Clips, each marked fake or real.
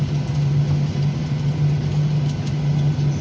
real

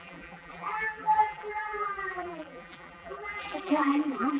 fake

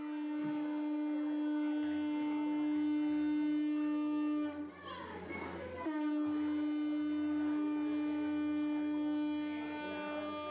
real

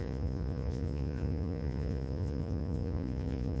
fake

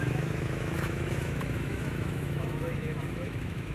fake